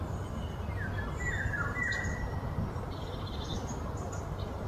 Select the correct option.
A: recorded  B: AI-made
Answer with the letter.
A